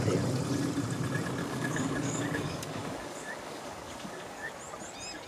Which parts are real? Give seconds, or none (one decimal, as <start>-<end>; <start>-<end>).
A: 0.0-1.4; 4.5-5.3